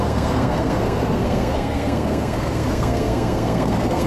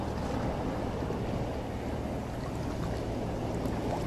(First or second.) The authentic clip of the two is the second